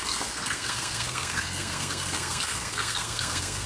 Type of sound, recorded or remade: remade